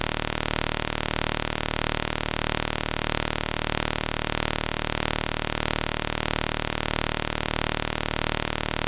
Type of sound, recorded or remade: recorded